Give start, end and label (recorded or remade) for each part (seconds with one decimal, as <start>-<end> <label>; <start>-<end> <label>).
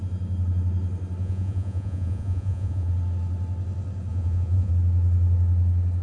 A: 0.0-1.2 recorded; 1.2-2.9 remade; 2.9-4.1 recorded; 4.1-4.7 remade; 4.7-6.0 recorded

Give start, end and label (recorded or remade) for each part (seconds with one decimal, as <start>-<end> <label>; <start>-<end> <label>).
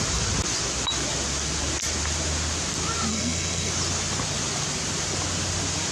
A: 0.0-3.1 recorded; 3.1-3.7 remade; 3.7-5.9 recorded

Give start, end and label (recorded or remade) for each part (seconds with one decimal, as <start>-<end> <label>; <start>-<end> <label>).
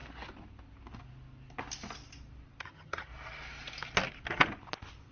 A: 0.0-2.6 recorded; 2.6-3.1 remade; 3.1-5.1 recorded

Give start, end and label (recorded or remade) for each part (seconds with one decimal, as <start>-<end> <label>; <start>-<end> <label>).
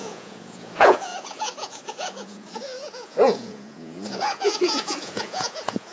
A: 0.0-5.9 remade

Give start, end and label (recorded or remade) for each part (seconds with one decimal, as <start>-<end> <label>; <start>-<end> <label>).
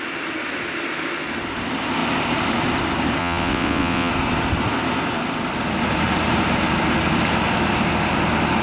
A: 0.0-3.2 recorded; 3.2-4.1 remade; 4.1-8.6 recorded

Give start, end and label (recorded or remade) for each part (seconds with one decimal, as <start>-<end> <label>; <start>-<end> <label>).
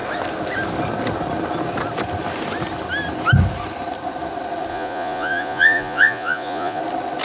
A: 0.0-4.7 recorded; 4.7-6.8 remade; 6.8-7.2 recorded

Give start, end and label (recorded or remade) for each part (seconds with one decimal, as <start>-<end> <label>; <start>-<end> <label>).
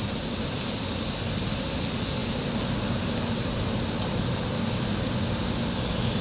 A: 0.0-6.2 recorded